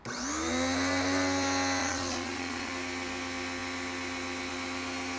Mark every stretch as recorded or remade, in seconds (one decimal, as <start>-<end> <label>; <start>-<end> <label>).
0.0-1.8 recorded; 1.8-2.7 remade; 2.7-5.2 recorded